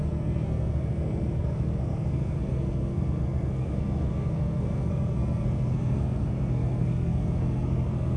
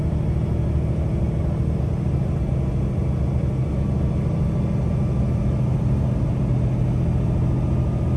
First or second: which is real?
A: second